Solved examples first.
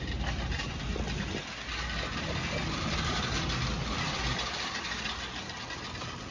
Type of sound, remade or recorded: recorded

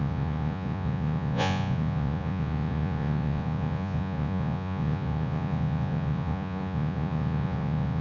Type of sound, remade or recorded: remade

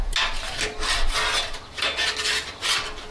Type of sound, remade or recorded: recorded